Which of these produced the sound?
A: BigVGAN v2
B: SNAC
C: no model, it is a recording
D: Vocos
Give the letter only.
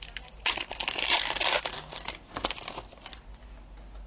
C